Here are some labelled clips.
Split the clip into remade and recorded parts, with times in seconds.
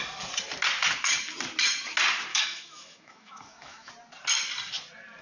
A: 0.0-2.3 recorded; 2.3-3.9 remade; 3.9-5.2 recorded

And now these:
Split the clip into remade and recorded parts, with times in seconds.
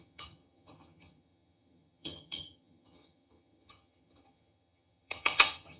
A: 0.0-5.8 remade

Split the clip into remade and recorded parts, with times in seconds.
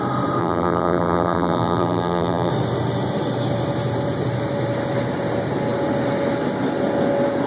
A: 0.0-0.4 recorded; 0.4-2.5 remade; 2.5-7.5 recorded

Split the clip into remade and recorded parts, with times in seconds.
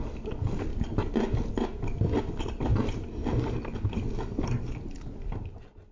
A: 0.0-5.9 recorded